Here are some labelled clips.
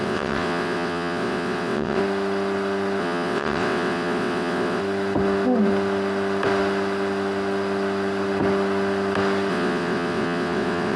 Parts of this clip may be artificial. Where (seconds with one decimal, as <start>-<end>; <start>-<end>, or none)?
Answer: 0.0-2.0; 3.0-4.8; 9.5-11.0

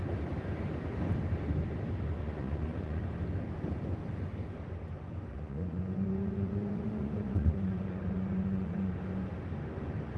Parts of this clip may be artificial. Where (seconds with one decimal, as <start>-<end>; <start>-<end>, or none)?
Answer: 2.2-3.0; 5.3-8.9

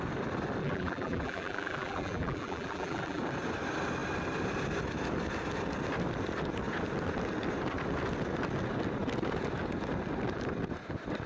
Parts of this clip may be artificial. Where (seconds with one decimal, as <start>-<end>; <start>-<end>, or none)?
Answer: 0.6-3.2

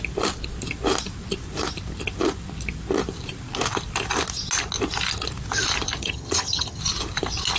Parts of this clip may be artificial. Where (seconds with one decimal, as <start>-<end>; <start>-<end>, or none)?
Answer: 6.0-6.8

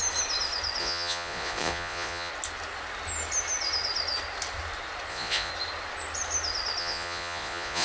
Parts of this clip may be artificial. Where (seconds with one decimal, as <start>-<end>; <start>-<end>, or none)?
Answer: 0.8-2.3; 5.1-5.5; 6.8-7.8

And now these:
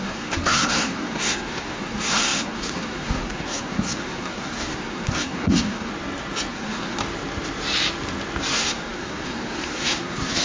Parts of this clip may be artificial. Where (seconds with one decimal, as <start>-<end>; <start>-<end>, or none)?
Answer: 0.0-5.9; 6.5-7.0; 8.5-10.4

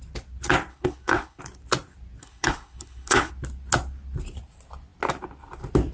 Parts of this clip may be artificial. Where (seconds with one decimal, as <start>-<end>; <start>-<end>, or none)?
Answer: 0.7-1.4; 2.2-3.3

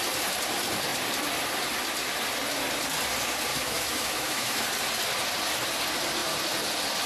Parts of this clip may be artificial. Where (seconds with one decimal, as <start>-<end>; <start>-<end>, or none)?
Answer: 3.5-4.6